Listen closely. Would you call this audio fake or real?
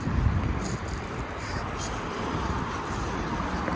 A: fake